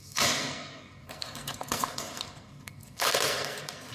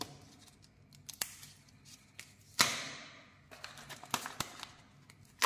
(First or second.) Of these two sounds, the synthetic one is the first